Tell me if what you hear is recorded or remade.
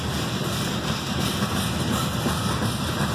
recorded